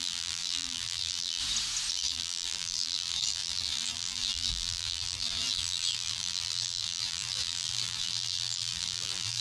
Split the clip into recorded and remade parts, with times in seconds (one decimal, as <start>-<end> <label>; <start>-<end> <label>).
0.0-1.4 remade; 1.4-1.9 recorded; 1.9-9.4 remade